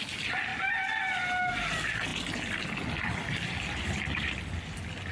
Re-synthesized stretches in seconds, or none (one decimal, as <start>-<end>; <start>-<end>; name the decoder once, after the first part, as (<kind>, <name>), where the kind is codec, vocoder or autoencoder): none